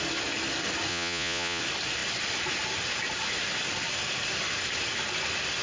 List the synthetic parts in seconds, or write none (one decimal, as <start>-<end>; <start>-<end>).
0.9-1.6